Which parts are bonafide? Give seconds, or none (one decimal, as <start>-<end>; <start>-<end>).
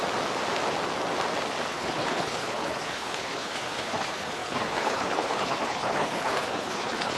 0.0-1.7